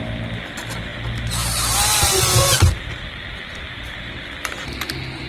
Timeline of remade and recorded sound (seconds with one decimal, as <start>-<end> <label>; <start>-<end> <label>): 0.0-5.3 recorded